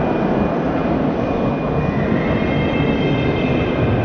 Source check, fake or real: real